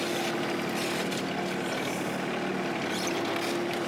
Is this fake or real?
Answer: real